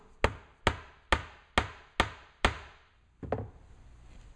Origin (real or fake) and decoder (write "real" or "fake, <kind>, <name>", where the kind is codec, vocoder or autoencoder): real